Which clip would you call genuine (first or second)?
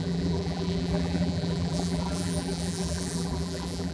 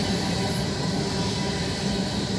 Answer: second